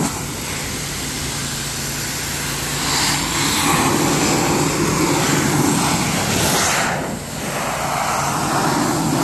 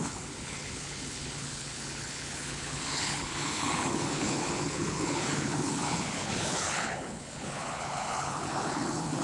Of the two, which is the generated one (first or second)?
second